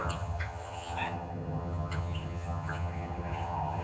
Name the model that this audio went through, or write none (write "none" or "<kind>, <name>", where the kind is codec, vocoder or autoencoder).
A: vocoder, HiFi-GAN